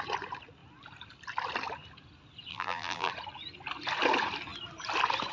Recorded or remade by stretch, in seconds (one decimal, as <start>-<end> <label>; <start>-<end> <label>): 0.0-2.5 recorded; 2.5-3.1 remade; 3.1-5.3 recorded